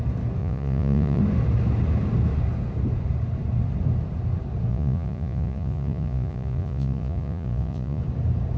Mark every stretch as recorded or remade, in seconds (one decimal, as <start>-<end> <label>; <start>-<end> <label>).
0.0-0.4 recorded; 0.4-1.2 remade; 1.2-4.7 recorded; 4.7-8.0 remade; 8.0-8.6 recorded